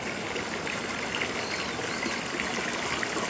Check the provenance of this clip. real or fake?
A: real